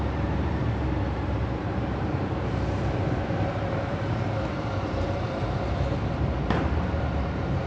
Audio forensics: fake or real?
fake